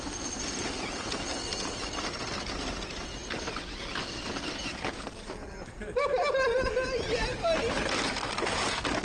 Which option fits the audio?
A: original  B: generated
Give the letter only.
A